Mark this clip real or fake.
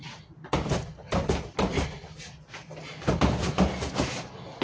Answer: real